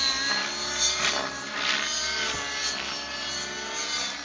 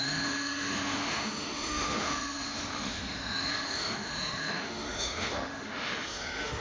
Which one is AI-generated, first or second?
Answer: second